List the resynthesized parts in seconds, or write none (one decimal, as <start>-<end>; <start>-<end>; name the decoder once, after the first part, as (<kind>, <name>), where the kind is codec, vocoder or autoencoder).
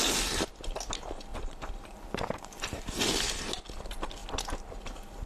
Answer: 1.3-3.0 (vocoder, BigVGAN v2)